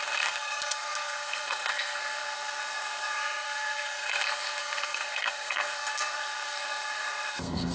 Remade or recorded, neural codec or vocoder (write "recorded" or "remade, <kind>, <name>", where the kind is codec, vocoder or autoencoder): remade, codec, SNAC